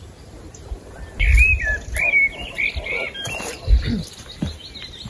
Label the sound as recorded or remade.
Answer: recorded